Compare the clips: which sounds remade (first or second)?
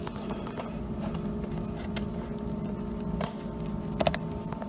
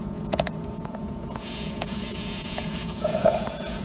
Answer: second